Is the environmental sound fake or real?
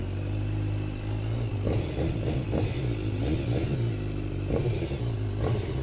real